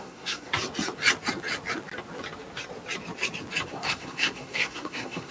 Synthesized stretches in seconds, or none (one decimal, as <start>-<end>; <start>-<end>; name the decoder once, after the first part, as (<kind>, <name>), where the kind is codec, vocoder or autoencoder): 0.0-0.5 (codec, SNAC); 3.7-5.3